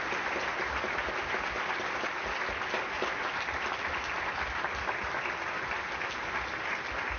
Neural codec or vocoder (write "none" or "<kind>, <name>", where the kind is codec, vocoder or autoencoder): none